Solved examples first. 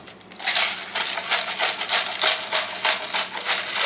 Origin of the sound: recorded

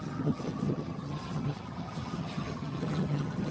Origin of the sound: remade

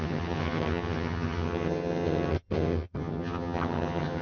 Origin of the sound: remade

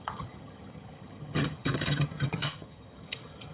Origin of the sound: remade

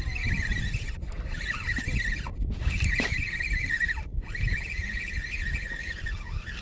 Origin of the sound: recorded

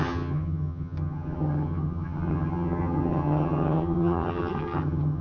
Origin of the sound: remade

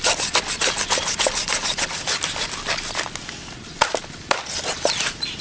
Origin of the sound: recorded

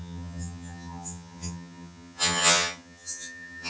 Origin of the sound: remade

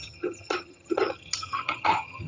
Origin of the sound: remade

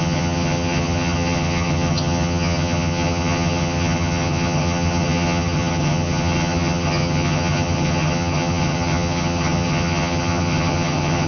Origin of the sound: remade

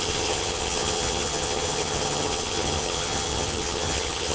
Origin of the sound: remade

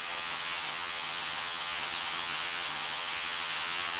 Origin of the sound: remade